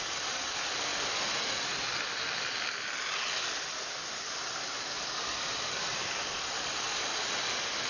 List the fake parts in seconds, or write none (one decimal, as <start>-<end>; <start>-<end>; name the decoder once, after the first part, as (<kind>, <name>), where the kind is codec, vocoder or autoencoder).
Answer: 0.0-7.1 (vocoder, BigVGAN v2)